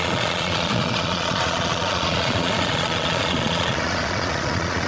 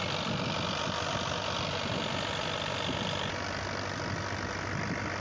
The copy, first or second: first